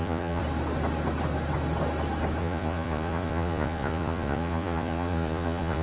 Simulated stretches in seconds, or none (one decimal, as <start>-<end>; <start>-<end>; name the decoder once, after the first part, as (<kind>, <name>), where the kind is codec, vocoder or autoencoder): 0.0-0.4 (vocoder, Vocos); 2.4-5.8